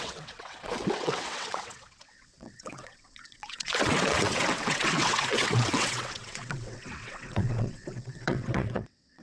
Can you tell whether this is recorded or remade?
remade